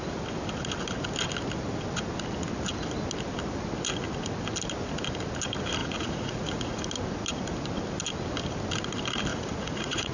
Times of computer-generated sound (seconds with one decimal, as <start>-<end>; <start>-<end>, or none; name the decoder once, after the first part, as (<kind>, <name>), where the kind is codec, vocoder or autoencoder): 5.8-6.8 (vocoder, Vocos); 9.3-10.1